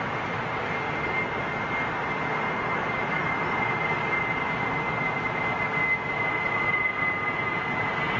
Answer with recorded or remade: recorded